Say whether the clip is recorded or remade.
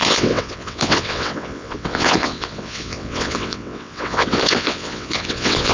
remade